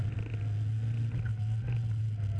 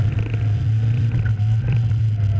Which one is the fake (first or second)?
second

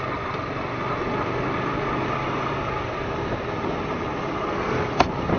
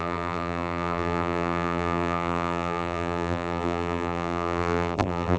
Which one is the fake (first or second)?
second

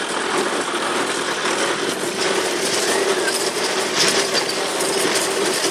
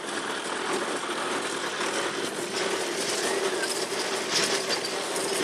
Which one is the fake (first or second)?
first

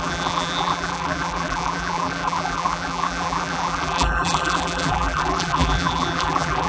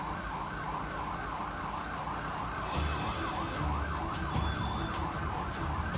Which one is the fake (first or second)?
first